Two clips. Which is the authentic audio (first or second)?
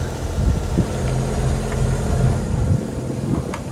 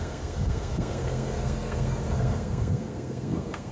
first